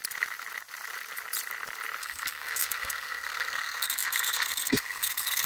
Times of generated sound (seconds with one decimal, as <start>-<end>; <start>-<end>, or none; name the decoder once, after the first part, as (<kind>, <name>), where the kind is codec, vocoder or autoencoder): 2.0-5.5 (codec, SNAC)